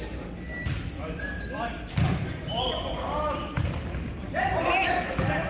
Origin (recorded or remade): recorded